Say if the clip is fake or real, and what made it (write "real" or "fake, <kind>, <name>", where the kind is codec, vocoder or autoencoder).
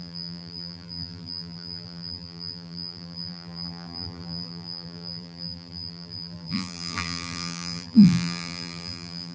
fake, vocoder, BigVGAN v2